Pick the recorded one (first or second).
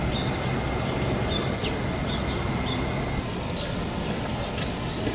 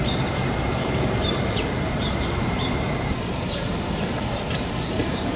first